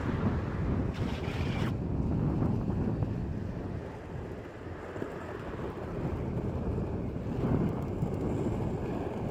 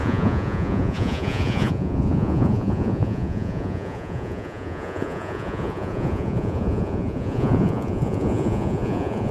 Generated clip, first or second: second